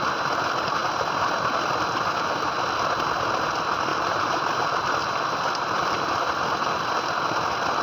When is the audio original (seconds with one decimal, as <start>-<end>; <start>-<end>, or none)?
0.0-3.9; 4.5-7.8